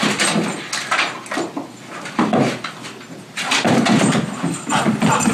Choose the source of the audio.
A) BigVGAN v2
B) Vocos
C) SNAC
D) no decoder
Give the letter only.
D